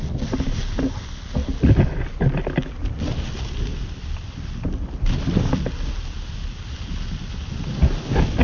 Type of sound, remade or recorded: recorded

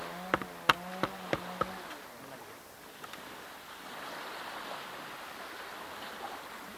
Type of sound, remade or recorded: recorded